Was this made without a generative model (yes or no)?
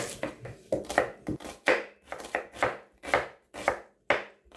yes